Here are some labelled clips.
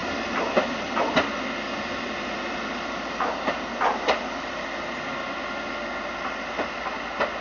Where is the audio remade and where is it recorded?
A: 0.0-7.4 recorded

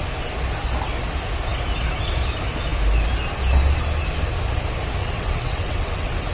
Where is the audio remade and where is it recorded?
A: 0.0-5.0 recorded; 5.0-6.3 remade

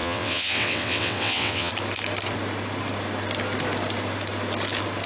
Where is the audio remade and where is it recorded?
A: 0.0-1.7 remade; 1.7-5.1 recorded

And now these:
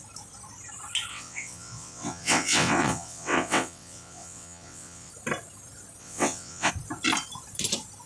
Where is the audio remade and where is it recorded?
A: 0.0-1.1 recorded; 1.1-5.1 remade; 5.1-6.0 recorded; 6.0-6.7 remade; 6.7-8.1 recorded